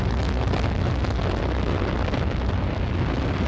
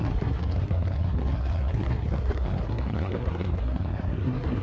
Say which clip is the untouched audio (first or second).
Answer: first